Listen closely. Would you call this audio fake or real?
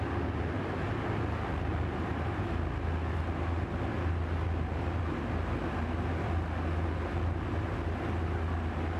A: real